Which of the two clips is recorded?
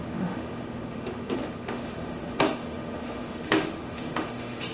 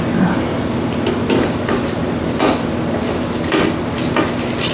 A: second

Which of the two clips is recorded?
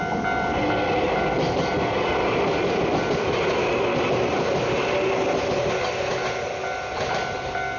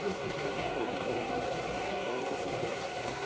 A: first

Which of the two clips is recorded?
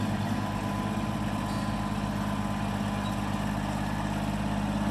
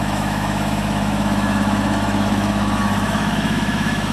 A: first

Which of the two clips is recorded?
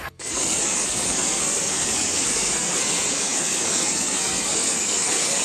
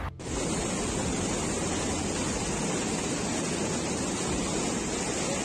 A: second